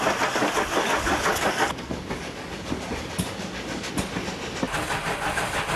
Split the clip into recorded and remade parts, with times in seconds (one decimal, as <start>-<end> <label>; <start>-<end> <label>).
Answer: 0.0-0.4 recorded; 0.4-3.9 remade; 3.9-5.8 recorded